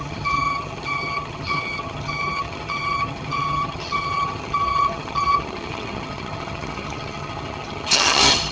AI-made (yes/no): yes